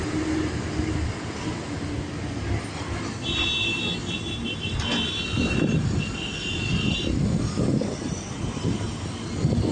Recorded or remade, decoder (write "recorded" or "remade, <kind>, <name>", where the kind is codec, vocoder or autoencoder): recorded